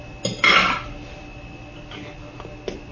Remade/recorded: recorded